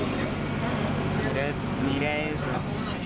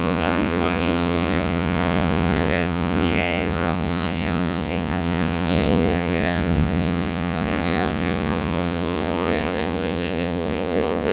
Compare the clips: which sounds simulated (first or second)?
second